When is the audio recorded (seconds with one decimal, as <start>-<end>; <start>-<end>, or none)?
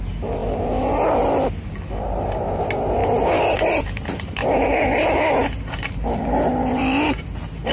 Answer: 0.0-7.7